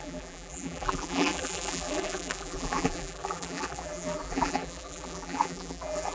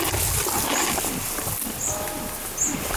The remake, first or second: first